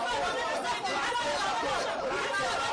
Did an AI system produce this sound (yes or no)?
yes